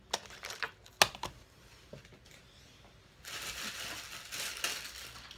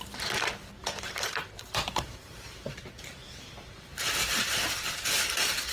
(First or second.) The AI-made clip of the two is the second